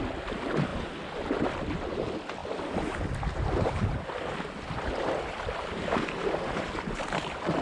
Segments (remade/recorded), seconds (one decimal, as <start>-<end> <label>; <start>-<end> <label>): 0.0-2.4 recorded; 2.4-7.0 remade; 7.0-7.6 recorded